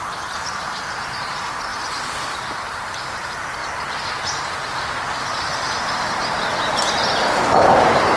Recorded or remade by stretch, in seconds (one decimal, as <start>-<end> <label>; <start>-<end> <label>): 0.0-3.6 remade; 3.6-5.8 recorded; 5.8-8.2 remade